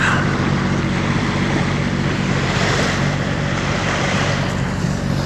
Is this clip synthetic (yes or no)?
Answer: yes